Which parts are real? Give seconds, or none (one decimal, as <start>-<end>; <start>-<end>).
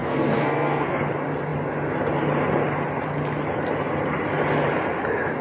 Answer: 1.0-5.4